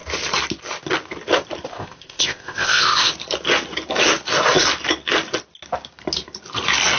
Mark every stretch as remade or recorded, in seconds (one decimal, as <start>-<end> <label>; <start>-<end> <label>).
0.0-1.7 recorded; 1.7-3.1 remade; 3.1-7.0 recorded